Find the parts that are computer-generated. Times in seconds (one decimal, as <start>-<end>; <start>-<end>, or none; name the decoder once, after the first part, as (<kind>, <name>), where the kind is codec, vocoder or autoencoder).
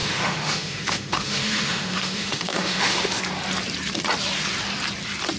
0.0-3.2 (autoencoder, DAC-VAE)